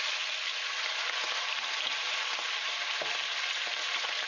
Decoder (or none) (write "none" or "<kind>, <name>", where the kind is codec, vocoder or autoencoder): none